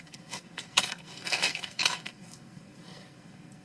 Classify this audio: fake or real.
fake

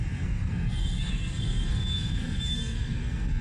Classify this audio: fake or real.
fake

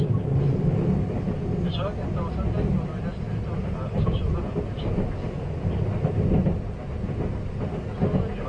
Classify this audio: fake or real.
real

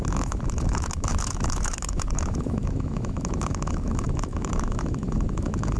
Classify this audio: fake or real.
fake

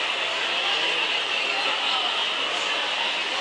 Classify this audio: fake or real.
real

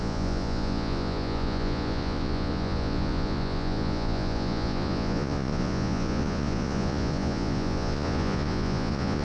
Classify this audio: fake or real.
fake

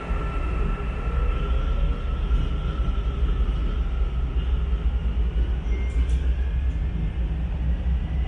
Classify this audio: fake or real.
real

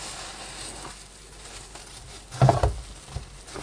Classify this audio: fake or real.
real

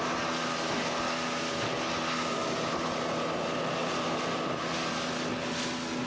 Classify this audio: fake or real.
real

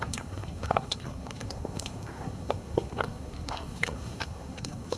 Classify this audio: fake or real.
fake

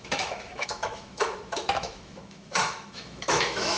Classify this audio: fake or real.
fake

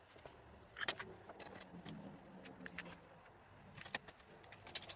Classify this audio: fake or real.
real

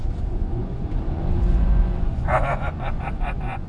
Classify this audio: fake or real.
fake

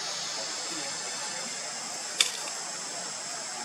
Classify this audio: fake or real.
real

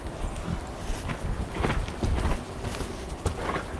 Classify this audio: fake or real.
real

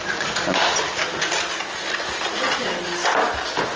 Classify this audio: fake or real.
real